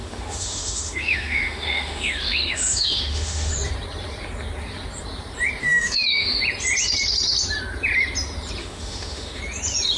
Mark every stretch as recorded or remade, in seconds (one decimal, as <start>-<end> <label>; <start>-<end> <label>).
0.0-3.5 remade; 3.5-5.6 recorded; 5.6-6.4 remade; 6.4-8.6 recorded; 8.6-9.4 remade; 9.4-10.0 recorded